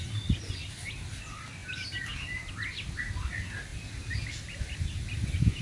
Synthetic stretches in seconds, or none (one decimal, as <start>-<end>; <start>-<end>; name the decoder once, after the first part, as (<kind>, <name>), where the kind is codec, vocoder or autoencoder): none